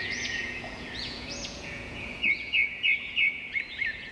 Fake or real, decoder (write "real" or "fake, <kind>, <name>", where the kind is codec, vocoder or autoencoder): fake, vocoder, Vocos